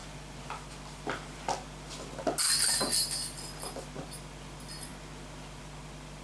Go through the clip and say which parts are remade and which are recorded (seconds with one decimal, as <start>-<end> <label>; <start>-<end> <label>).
0.0-6.2 recorded